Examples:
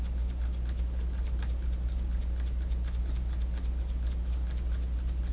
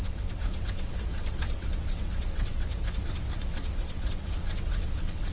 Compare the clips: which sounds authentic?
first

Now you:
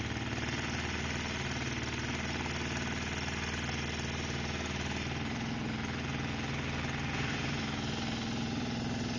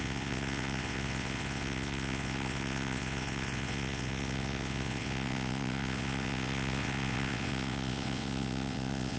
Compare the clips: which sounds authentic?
first